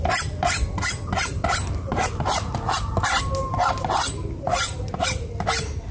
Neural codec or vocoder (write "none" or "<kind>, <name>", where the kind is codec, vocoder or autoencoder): none